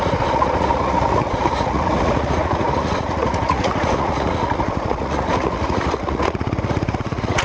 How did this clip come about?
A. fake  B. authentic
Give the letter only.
A